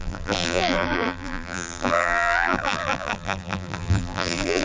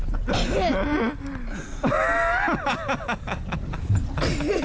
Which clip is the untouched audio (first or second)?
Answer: second